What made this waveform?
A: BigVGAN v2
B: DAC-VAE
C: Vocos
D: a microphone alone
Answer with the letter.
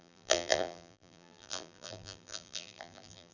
A